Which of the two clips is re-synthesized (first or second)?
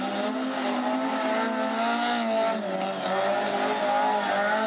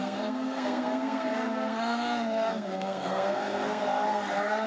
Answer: second